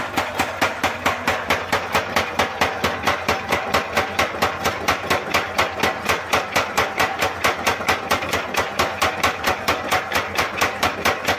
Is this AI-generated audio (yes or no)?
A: no